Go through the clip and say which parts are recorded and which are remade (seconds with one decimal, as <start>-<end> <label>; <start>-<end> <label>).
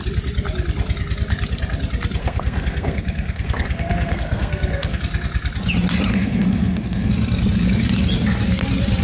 0.0-2.2 recorded; 2.2-5.0 remade; 5.0-6.1 recorded; 6.1-7.1 remade; 7.1-9.0 recorded